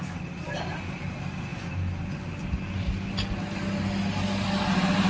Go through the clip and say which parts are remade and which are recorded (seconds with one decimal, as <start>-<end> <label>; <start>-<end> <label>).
0.0-5.1 recorded

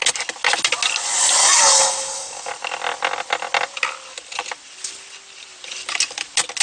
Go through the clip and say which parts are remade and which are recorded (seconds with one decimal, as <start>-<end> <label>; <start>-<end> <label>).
0.0-1.4 recorded; 1.4-2.5 remade; 2.5-6.6 recorded

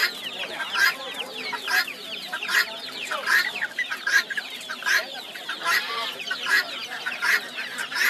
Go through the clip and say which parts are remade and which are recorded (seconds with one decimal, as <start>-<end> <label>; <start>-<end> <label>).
0.0-1.0 recorded; 1.0-8.1 remade

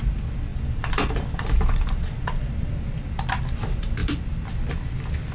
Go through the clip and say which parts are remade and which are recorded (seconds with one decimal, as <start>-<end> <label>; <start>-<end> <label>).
0.0-0.5 recorded; 0.5-2.7 remade; 2.7-5.3 recorded

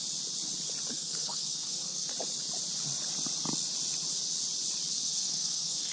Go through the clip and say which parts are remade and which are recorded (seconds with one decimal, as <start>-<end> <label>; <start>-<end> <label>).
0.0-0.9 recorded; 0.9-2.1 remade; 2.1-4.9 recorded; 4.9-5.9 remade

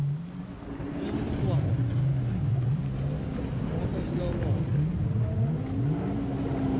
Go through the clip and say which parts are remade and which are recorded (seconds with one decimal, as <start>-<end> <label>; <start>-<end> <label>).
0.0-6.8 recorded